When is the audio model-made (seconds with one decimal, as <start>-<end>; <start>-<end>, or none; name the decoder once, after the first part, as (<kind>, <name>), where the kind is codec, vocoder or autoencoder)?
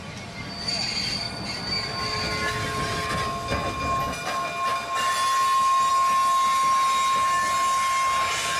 none